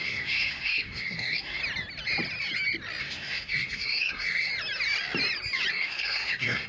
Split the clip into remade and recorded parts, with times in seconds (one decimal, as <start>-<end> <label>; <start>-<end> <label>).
0.0-1.6 remade; 1.6-3.0 recorded; 3.0-4.5 remade; 4.5-5.7 recorded; 5.7-6.7 remade